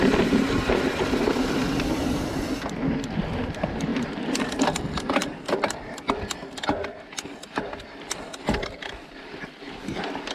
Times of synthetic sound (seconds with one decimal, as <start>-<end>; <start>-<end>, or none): 3.9-6.1